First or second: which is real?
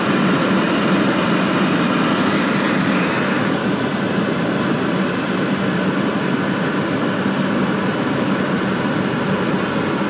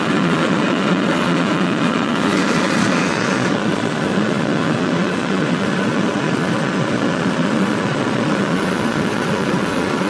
first